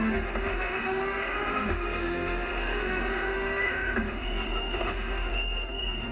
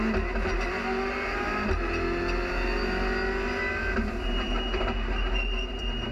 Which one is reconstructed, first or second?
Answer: first